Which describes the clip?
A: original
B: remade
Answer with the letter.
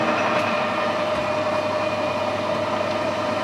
A